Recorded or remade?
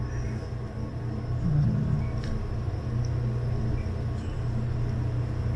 recorded